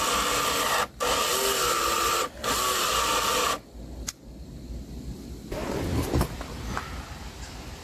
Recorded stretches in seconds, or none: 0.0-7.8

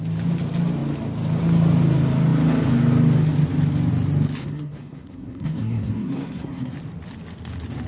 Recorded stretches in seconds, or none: 0.0-4.4; 6.7-7.9

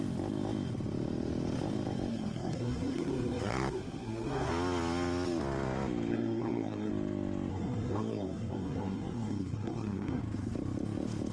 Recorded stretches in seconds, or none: 0.0-2.1; 4.5-6.1; 6.9-7.5; 10.2-11.3